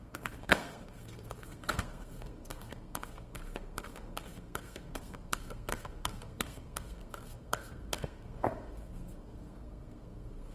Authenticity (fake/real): fake